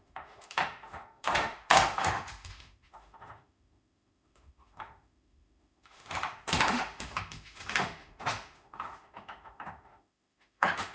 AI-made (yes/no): yes